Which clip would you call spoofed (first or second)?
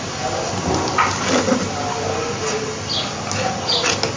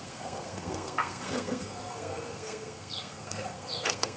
second